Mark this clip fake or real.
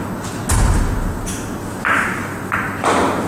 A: real